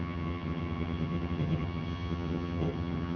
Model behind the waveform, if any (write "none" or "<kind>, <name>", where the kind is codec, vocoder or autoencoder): vocoder, HiFi-GAN